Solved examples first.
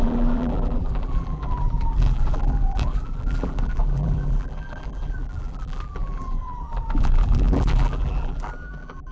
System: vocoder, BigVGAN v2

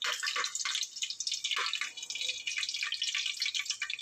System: none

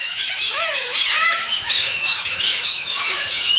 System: autoencoder, DAC-VAE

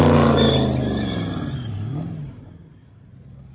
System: none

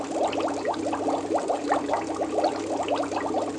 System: none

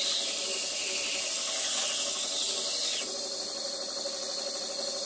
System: none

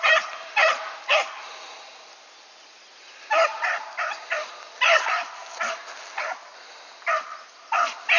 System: none